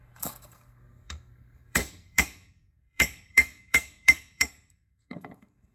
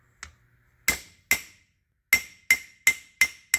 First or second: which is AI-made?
first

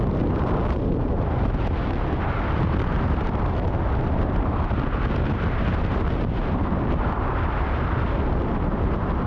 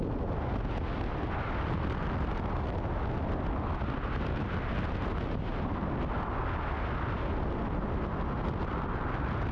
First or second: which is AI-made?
first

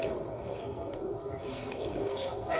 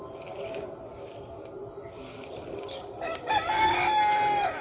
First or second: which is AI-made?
first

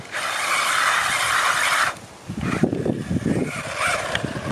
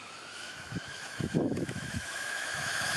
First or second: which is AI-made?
second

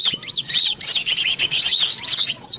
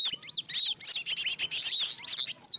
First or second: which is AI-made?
first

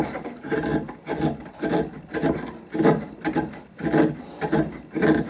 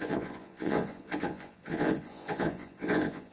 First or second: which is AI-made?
second